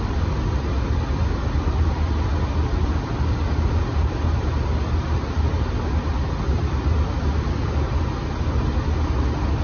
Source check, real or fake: real